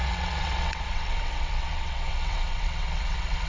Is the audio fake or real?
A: fake